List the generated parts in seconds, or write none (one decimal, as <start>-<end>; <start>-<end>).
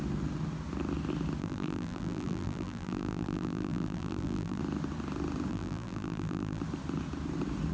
1.4-4.6; 5.5-6.6